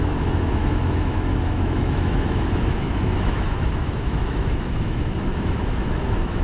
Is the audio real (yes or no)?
no